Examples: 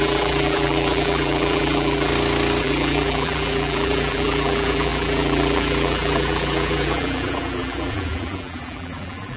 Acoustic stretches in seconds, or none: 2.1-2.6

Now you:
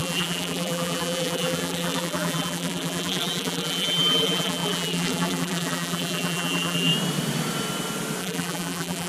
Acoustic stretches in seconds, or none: 6.9-8.2